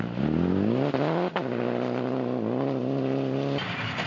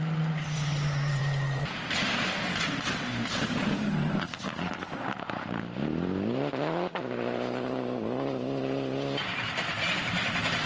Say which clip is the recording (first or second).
first